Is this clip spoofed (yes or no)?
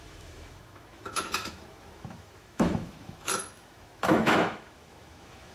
yes